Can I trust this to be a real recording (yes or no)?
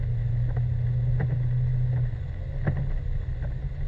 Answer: yes